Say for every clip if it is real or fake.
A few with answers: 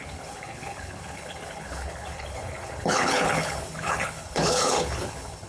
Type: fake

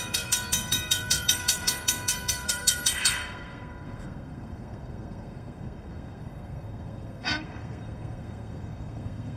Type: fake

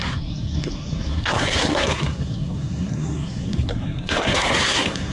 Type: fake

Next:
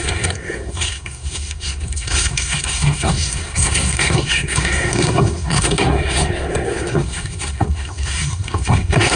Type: fake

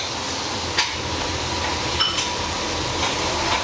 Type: real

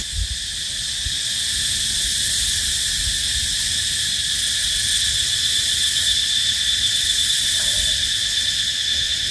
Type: real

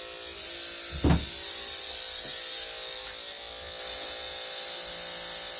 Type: real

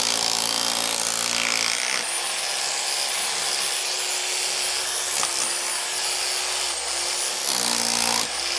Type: real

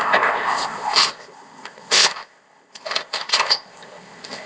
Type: fake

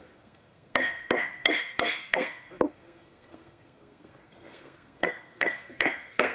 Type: fake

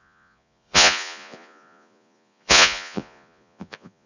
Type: fake